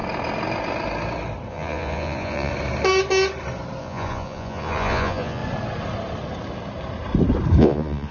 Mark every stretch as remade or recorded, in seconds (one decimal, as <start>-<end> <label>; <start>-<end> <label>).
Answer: 0.0-1.5 recorded; 1.5-2.5 remade; 2.5-3.8 recorded; 3.8-5.4 remade; 5.4-7.6 recorded; 7.6-8.1 remade